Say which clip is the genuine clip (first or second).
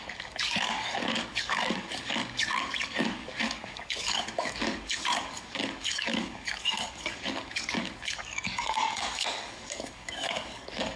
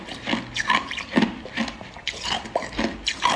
second